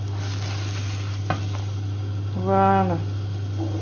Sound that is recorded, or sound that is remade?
recorded